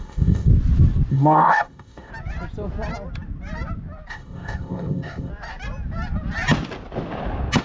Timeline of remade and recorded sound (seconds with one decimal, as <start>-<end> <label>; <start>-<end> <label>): 0.0-0.5 remade; 0.5-1.1 recorded; 1.1-2.1 remade; 2.1-4.1 recorded; 4.1-5.3 remade; 5.3-7.6 recorded